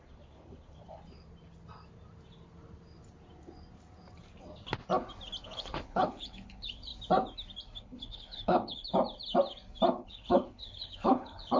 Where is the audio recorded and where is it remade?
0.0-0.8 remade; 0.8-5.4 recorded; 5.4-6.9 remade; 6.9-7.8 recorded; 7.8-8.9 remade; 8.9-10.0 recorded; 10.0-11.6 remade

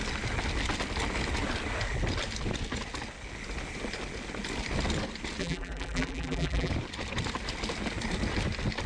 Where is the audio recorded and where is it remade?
0.0-5.4 recorded; 5.4-6.7 remade; 6.7-8.9 recorded

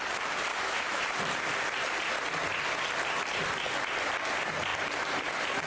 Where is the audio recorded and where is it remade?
0.0-0.5 recorded; 0.5-1.0 remade; 1.0-5.7 recorded

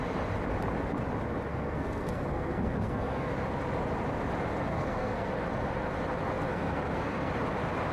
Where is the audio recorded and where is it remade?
0.0-1.5 recorded; 1.5-3.3 remade; 3.3-4.7 recorded; 4.7-5.3 remade; 5.3-6.5 recorded; 6.5-7.3 remade; 7.3-7.9 recorded

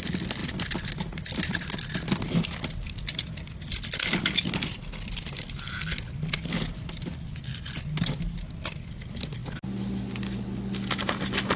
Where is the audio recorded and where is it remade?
0.0-11.6 recorded

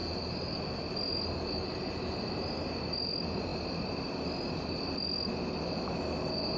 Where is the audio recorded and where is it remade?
0.0-6.6 recorded

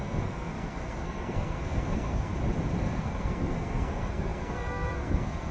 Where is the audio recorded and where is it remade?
0.0-2.3 remade; 2.3-2.8 recorded; 2.8-5.5 remade